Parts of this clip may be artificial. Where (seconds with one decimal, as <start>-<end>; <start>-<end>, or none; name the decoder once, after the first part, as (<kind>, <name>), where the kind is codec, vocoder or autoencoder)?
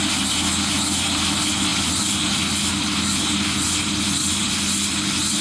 none